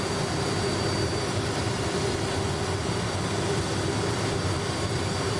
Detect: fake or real real